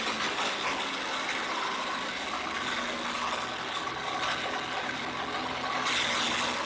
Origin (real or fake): real